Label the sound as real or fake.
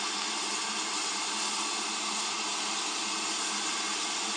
real